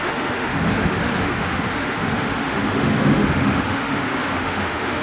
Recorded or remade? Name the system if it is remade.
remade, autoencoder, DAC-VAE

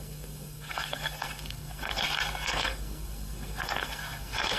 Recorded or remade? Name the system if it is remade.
remade, codec, SNAC